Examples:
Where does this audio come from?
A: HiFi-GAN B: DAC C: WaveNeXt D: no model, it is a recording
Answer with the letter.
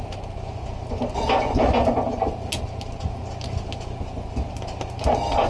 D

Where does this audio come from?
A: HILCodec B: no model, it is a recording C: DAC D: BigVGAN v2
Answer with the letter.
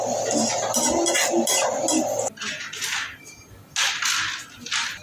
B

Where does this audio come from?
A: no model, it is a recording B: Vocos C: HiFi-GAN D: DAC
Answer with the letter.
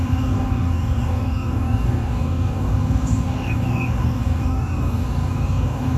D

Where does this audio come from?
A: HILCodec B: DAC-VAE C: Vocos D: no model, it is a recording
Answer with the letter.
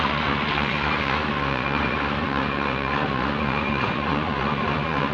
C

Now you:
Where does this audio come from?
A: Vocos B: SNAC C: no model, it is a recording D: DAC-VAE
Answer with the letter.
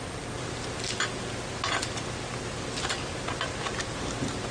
C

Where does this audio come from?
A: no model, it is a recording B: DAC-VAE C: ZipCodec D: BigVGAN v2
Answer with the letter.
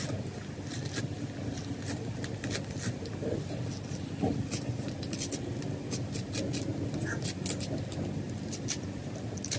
A